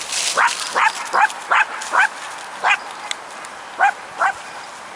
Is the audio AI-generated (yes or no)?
no